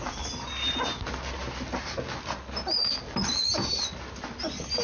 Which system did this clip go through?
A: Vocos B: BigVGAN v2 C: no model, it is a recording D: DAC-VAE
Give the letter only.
C